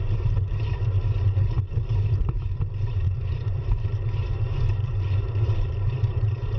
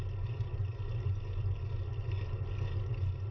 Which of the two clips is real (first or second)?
second